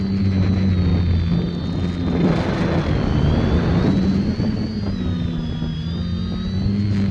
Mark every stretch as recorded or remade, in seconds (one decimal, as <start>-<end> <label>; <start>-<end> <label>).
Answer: 0.0-7.1 recorded